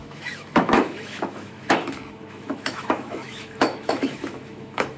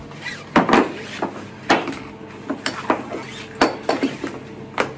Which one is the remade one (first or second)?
first